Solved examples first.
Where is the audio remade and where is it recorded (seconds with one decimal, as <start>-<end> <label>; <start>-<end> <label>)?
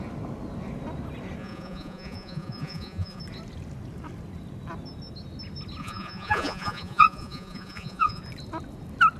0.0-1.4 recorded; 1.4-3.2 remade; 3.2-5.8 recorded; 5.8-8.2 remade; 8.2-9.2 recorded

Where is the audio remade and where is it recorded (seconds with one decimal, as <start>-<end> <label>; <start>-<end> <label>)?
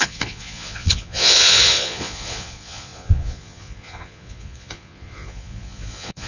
0.0-6.3 remade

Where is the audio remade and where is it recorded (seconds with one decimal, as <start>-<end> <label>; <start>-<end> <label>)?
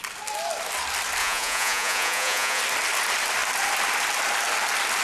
0.0-1.2 recorded; 1.2-2.6 remade; 2.6-5.0 recorded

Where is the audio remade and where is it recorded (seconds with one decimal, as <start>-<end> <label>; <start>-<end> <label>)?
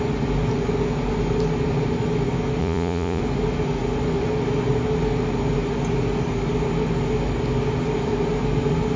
0.0-2.6 recorded; 2.6-3.2 remade; 3.2-9.0 recorded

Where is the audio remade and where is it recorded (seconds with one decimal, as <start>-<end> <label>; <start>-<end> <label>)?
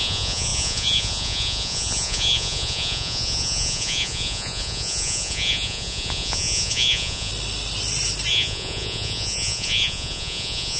0.0-7.3 remade; 7.3-8.3 recorded; 8.3-10.8 remade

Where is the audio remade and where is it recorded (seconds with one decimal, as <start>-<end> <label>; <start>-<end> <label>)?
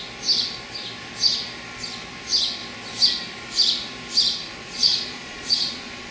0.0-4.4 recorded; 4.4-6.1 remade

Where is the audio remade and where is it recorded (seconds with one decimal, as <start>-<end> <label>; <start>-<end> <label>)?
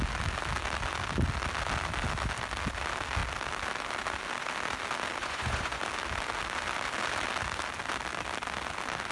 0.0-5.2 recorded; 5.2-5.8 remade; 5.8-9.1 recorded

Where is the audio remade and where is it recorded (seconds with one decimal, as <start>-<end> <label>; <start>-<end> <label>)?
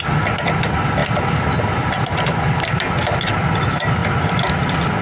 0.0-5.0 recorded